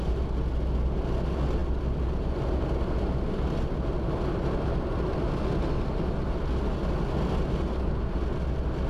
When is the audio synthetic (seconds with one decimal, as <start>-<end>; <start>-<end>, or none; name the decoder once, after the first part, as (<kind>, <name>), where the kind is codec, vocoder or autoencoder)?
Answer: none